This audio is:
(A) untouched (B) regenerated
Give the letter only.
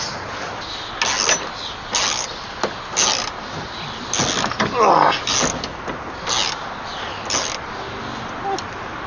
A